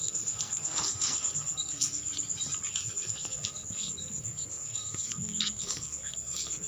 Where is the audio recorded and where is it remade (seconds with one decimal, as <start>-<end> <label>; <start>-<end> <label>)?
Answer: 0.0-2.1 remade; 2.1-2.7 recorded; 2.7-6.7 remade